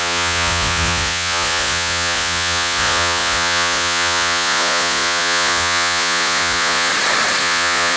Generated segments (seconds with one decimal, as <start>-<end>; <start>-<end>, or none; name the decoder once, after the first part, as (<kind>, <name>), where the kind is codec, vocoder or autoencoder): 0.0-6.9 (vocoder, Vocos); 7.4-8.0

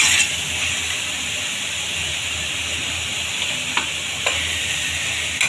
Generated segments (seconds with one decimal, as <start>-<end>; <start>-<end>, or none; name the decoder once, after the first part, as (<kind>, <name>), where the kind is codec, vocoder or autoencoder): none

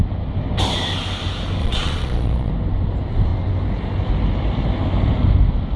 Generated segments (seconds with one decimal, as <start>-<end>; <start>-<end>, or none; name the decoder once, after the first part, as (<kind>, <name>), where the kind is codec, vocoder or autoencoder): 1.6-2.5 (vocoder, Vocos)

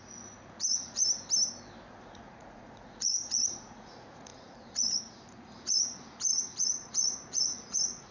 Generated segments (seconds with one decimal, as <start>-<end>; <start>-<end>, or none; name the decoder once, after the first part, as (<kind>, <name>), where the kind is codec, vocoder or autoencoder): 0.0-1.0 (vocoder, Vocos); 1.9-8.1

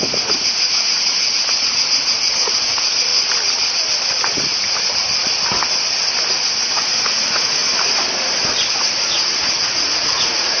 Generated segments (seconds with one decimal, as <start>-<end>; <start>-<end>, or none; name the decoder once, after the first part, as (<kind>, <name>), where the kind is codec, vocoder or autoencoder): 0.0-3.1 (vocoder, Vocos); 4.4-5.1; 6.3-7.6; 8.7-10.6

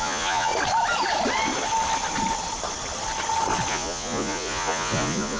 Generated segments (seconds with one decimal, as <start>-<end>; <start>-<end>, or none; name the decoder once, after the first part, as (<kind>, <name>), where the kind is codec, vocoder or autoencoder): 0.0-0.5 (vocoder, Vocos); 3.7-5.4

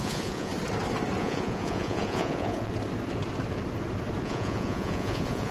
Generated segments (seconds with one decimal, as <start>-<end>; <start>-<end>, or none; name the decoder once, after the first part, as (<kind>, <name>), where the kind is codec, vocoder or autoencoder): 0.0-0.5 (vocoder, Vocos); 1.2-2.7; 4.2-5.5

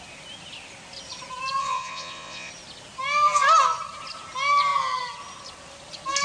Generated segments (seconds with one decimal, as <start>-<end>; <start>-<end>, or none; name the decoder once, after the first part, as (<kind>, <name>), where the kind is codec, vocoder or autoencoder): 1.6-2.5 (vocoder, Vocos)